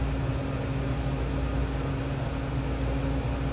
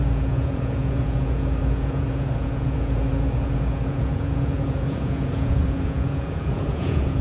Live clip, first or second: first